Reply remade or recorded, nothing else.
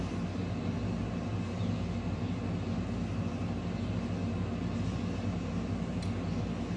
recorded